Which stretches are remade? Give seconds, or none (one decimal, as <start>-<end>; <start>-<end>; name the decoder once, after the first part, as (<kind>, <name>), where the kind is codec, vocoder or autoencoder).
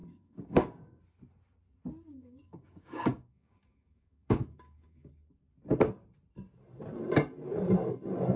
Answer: 0.0-1.0 (codec, DAC); 2.1-5.1